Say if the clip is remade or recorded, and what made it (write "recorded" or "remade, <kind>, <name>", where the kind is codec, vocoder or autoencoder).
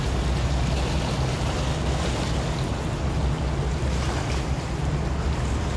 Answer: recorded